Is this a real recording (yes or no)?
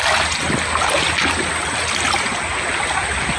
yes